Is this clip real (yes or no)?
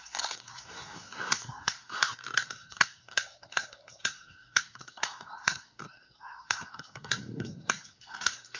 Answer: no